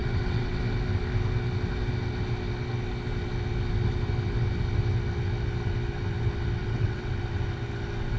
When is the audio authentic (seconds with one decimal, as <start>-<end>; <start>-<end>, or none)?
0.6-6.6; 7.1-8.2